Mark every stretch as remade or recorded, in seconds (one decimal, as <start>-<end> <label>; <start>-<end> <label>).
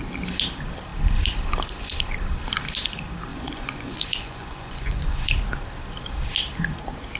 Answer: 0.0-3.3 recorded; 3.3-5.3 remade; 5.3-7.2 recorded